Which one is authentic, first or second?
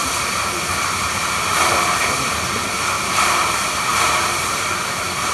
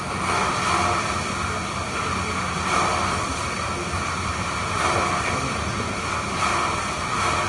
second